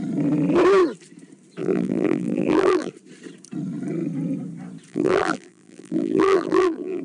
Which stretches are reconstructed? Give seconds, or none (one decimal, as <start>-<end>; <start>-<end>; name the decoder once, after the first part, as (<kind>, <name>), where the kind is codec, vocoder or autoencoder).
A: 1.6-2.9 (vocoder, BigVGAN v2); 4.9-7.0